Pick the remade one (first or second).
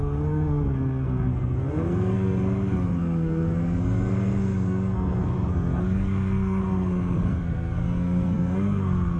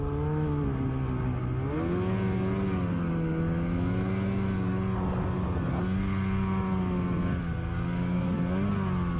first